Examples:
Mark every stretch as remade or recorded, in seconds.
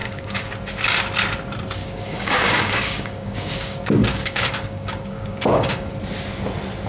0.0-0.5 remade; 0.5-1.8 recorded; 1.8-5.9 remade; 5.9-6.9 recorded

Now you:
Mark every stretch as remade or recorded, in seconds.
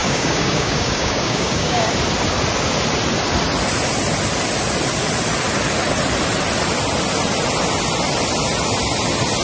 0.0-1.9 remade; 1.9-9.4 recorded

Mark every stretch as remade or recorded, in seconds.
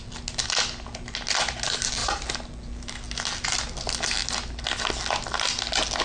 0.0-6.0 recorded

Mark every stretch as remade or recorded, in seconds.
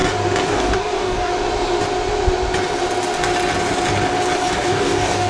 0.0-0.5 recorded; 0.5-1.3 remade; 1.3-4.5 recorded; 4.5-5.3 remade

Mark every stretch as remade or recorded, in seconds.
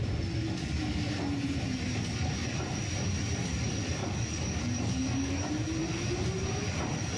0.0-4.0 recorded; 4.0-5.5 remade; 5.5-7.2 recorded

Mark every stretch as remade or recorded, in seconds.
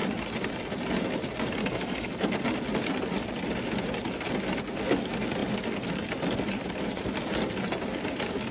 0.0-1.6 recorded; 1.6-2.1 remade; 2.1-8.5 recorded